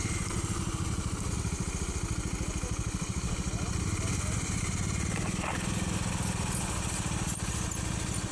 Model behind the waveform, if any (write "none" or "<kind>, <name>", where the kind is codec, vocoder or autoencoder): none